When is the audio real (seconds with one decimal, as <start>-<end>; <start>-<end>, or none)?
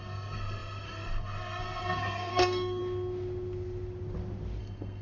2.8-4.6